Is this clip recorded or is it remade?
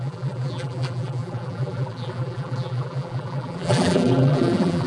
remade